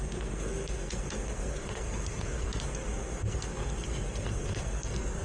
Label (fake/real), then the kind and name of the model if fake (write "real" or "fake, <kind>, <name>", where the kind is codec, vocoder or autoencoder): fake, codec, SNAC